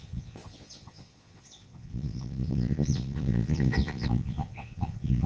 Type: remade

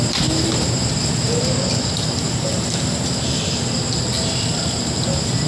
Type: recorded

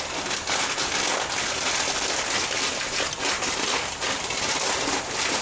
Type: recorded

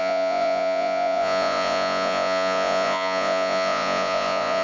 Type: remade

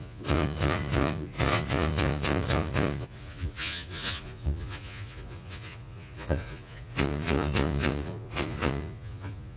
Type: remade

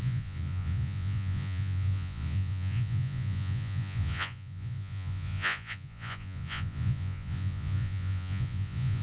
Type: remade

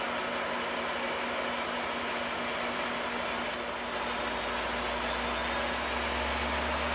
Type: recorded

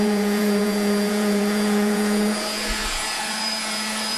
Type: remade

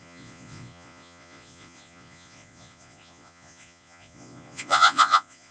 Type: remade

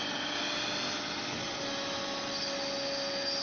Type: recorded